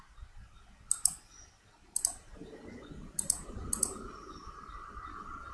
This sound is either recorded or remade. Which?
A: recorded